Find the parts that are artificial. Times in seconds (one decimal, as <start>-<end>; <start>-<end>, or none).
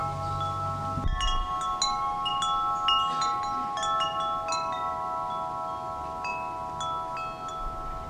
none